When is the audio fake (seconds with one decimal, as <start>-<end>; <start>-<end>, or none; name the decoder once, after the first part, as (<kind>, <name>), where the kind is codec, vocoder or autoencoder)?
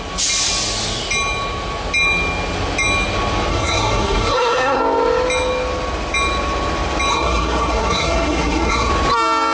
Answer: 3.5-4.8 (codec, SNAC); 7.1-8.9